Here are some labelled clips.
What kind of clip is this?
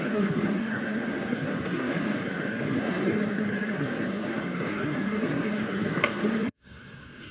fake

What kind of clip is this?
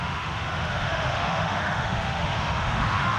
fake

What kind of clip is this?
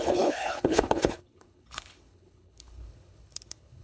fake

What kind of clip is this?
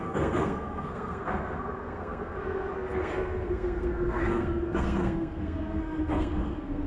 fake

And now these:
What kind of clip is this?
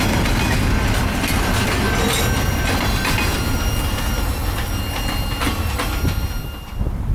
real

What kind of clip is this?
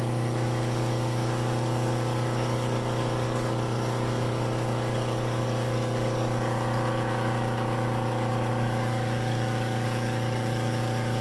fake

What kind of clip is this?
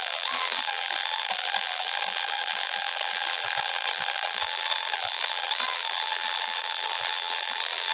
fake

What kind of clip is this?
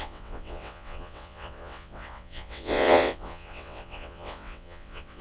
fake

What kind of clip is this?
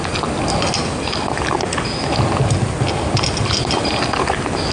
real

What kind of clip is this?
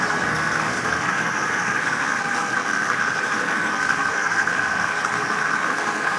fake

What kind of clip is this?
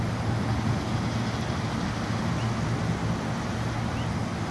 real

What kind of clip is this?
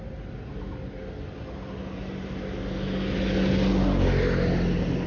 real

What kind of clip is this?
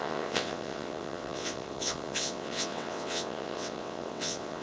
fake